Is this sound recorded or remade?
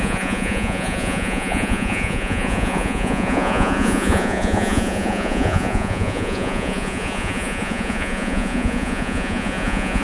remade